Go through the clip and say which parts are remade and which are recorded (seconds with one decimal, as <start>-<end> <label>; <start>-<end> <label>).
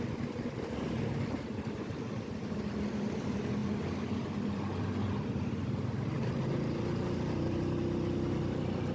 0.0-8.9 recorded